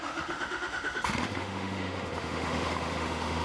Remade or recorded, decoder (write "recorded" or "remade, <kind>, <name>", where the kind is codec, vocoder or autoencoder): remade, autoencoder, DAC-VAE